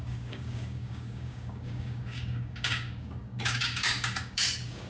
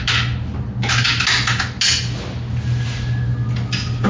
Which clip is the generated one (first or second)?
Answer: first